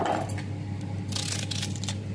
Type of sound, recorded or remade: recorded